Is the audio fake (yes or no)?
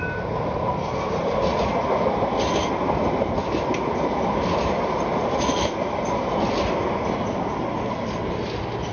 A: no